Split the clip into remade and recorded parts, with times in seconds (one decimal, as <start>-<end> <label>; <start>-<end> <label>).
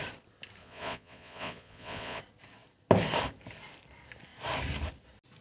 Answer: 0.0-0.6 recorded; 0.6-2.2 remade; 2.2-5.4 recorded